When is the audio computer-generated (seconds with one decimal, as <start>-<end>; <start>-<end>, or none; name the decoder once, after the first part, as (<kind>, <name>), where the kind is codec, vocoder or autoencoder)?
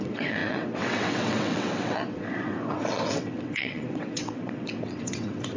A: 0.0-5.6 (vocoder, WaveNeXt)